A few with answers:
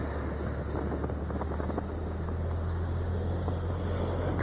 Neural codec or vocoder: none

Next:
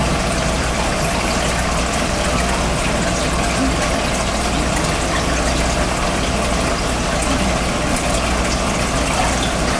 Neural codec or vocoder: none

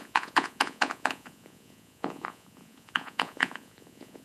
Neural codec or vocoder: vocoder, Vocos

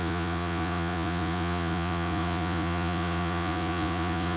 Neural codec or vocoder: vocoder, Vocos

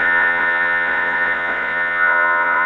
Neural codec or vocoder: vocoder, Vocos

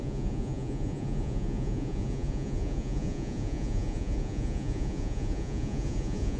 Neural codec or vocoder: vocoder, Vocos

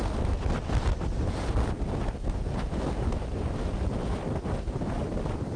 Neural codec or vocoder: none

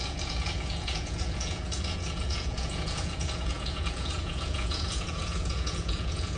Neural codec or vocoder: vocoder, Vocos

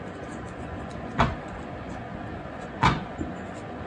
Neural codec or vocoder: vocoder, Vocos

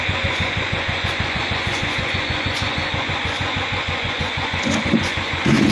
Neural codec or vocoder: vocoder, Vocos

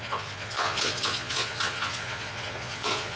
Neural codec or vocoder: vocoder, Vocos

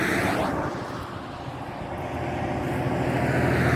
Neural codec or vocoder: none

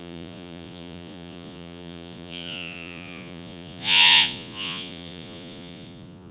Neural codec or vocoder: vocoder, Vocos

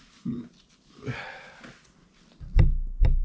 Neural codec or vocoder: none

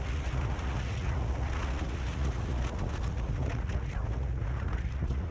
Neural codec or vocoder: vocoder, Vocos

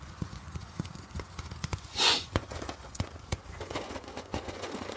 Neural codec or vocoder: vocoder, Vocos